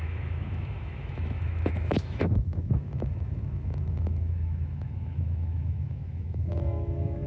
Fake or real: fake